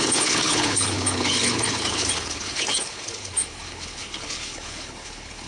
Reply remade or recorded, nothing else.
remade